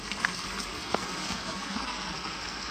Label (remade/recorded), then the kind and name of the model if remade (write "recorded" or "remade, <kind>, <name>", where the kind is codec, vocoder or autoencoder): remade, codec, SNAC